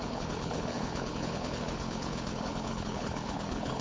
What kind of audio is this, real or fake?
fake